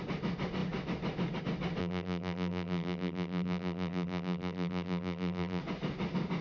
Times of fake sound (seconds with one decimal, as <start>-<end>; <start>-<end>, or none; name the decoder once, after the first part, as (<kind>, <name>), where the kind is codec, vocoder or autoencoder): 1.8-5.6 (vocoder, BigVGAN v2)